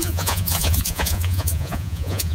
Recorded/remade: remade